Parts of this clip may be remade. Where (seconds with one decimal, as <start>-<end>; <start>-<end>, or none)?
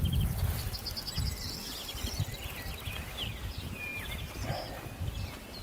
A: 0.8-2.1